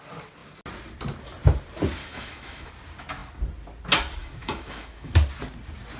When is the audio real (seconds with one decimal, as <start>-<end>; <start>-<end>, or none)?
0.0-2.0; 2.7-4.2; 5.1-6.0